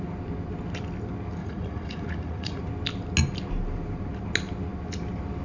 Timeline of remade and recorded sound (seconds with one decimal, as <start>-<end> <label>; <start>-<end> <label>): 0.0-1.4 recorded; 1.4-2.6 remade; 2.6-5.4 recorded